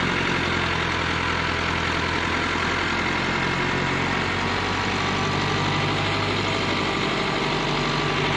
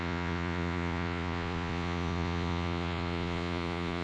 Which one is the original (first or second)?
first